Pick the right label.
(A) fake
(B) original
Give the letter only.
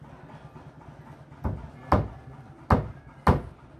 B